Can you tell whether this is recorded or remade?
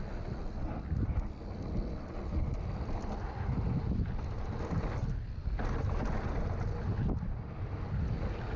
recorded